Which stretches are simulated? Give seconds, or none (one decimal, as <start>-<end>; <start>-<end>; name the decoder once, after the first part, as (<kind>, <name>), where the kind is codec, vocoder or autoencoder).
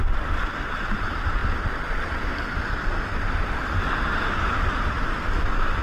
none